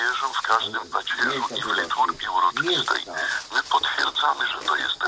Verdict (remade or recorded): recorded